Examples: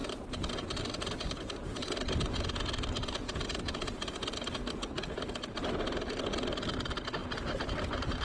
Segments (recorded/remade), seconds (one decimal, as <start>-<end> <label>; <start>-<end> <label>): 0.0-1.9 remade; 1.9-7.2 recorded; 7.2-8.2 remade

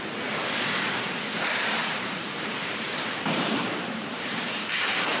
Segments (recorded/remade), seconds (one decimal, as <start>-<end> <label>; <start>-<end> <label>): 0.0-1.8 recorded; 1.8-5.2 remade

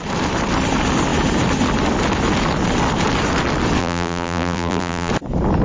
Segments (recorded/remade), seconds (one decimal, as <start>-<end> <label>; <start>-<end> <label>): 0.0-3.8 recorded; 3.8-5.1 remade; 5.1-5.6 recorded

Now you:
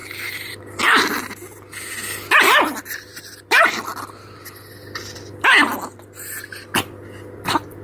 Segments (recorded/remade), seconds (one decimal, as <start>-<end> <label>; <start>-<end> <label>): 0.0-3.1 recorded; 3.1-5.3 remade; 5.3-7.8 recorded

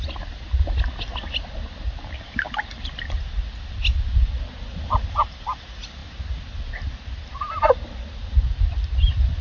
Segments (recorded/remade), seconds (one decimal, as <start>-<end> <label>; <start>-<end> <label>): 0.0-9.4 recorded